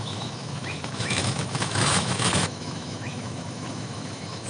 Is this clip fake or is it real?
fake